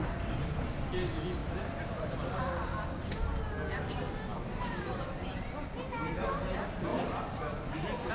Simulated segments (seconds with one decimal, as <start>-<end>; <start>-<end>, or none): 1.4-2.1; 4.3-5.5; 6.9-8.1